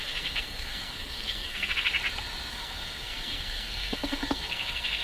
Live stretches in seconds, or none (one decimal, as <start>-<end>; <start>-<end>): 1.9-2.5